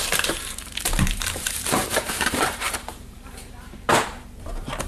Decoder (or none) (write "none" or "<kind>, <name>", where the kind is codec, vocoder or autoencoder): vocoder, BigVGAN v2